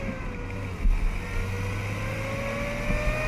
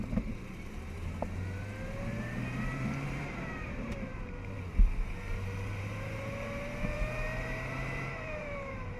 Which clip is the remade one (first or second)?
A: second